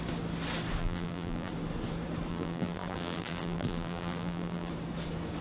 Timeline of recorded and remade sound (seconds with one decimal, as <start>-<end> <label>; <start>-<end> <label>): 0.0-0.8 recorded; 0.8-1.5 remade; 1.5-2.3 recorded; 2.3-4.7 remade; 4.7-5.4 recorded